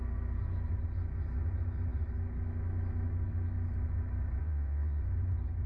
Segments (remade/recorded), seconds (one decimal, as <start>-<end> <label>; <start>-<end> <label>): 0.0-4.4 recorded; 4.4-5.0 remade; 5.0-5.7 recorded